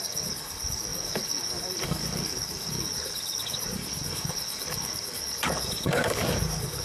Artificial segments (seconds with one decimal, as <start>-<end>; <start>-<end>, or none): 0.0-6.8